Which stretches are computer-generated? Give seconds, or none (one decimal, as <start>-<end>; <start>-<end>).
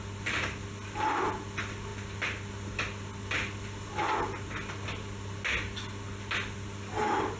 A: none